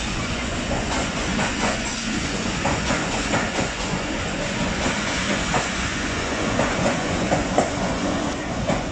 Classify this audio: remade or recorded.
remade